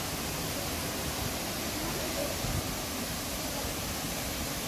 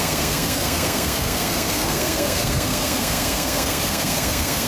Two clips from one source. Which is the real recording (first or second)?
first